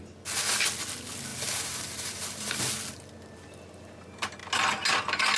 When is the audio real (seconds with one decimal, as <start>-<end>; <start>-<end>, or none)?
0.0-1.3; 2.6-5.4